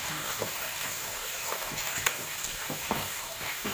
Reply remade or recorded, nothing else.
remade